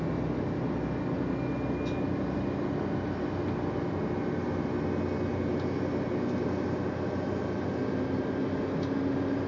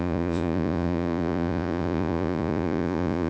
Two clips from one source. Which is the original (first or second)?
first